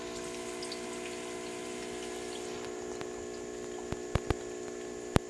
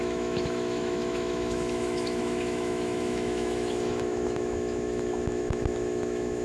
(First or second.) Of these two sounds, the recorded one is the first